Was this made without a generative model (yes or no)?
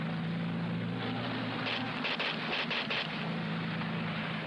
yes